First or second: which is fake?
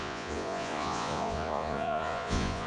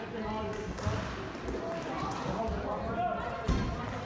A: first